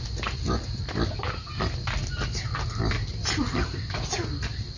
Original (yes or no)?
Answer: yes